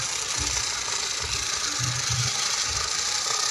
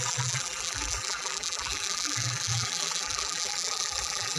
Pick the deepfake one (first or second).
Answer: second